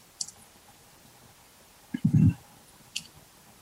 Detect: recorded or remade recorded